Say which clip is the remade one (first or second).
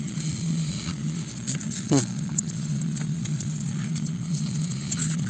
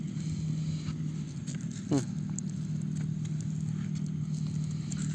first